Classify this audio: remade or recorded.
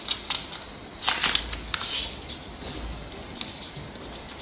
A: recorded